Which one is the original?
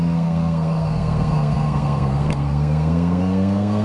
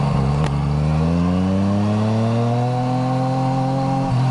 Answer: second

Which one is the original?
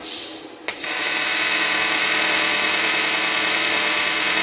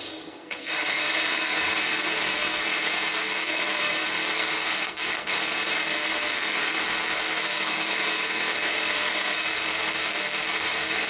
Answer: first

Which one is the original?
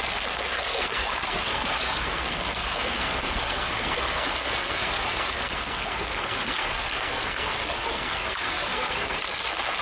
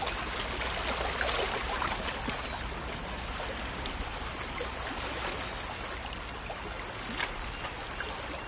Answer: second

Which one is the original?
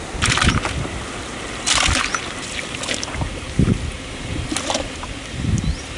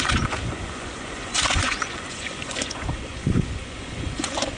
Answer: first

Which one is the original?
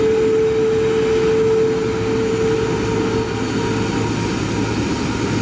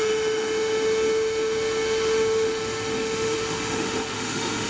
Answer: first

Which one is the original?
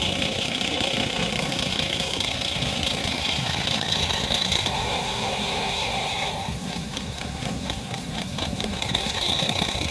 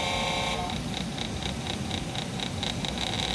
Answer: second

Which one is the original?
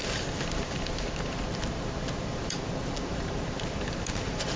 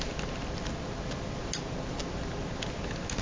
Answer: second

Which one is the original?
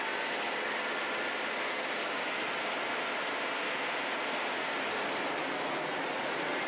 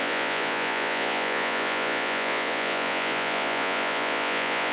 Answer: first